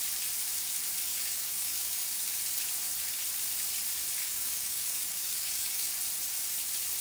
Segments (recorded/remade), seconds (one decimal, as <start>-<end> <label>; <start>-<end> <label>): 0.0-1.1 recorded; 1.1-2.4 remade; 2.4-4.2 recorded; 4.2-5.9 remade; 5.9-7.0 recorded